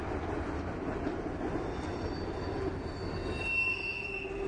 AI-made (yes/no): no